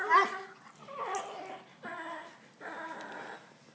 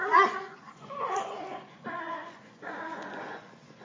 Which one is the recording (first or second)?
first